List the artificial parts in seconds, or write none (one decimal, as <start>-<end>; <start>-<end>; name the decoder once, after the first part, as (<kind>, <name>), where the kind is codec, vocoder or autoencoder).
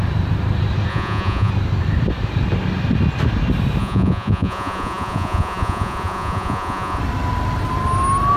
0.9-1.5 (vocoder, Vocos); 3.8-7.0